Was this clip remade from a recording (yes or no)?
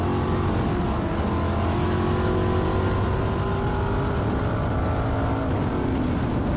no